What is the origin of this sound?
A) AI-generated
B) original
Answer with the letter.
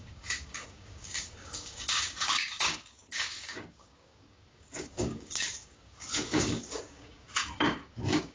A